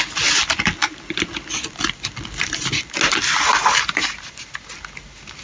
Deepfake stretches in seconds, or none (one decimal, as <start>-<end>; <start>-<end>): none